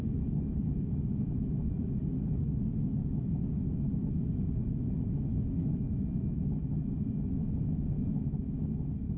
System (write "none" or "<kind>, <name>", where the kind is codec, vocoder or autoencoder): autoencoder, DAC-VAE